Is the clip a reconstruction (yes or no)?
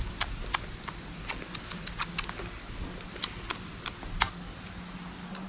no